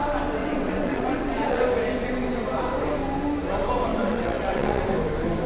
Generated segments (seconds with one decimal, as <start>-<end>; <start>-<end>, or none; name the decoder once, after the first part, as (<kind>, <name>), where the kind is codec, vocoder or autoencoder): 0.4-1.6 (vocoder, WaveNeXt); 3.9-4.8